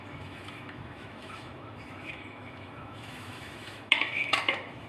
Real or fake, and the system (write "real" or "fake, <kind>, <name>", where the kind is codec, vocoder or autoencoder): fake, autoencoder, DAC-VAE